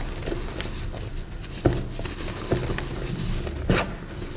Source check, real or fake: real